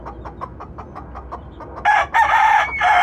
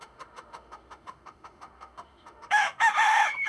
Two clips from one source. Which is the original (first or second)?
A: first